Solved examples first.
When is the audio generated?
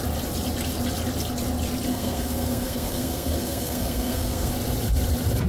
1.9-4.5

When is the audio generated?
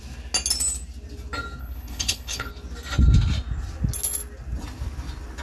1.6-2.5